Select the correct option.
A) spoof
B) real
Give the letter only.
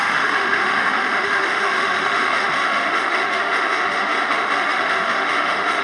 A